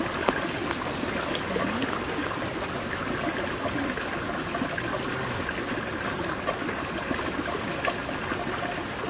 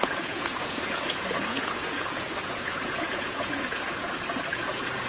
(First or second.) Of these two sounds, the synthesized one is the second